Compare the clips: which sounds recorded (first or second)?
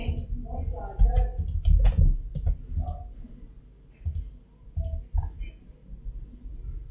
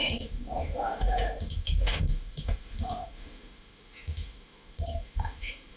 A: first